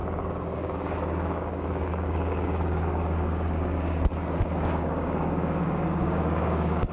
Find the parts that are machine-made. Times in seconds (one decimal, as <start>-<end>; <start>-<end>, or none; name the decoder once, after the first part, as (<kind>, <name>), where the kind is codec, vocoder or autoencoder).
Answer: 0.0-6.9 (codec, DAC)